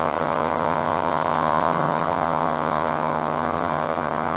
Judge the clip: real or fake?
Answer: fake